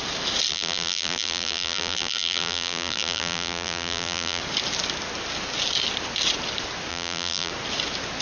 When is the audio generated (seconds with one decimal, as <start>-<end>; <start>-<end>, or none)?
0.5-4.4; 6.9-7.5